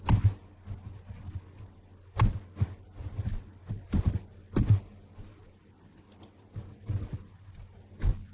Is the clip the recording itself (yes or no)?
yes